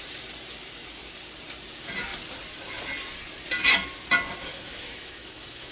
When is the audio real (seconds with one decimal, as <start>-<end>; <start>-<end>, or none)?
0.0-4.5